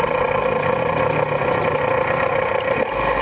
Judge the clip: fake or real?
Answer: real